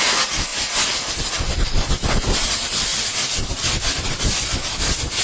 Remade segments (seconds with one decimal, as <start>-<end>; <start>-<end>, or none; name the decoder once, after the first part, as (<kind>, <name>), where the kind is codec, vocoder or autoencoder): none

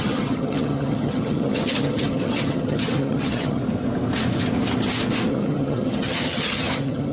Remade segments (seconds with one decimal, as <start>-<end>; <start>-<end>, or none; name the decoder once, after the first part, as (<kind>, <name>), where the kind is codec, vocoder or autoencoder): 0.0-3.6 (vocoder, HiFi-GAN); 5.3-7.1

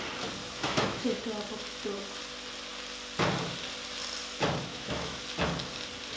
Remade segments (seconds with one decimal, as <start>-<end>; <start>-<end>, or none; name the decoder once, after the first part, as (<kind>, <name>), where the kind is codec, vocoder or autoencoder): 0.4-1.2 (autoencoder, DAC-VAE); 4.7-5.2

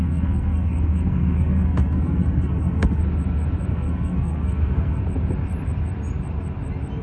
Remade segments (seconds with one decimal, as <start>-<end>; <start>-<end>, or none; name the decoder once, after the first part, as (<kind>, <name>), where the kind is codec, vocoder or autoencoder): 0.0-3.0 (codec, SNAC); 3.7-5.0

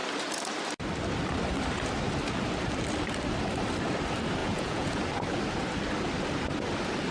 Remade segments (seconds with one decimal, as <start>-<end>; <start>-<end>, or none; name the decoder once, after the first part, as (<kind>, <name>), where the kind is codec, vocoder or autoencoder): 4.4-5.0 (vocoder, Vocos)